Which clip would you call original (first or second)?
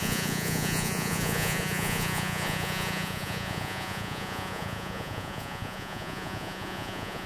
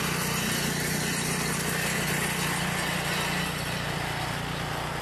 second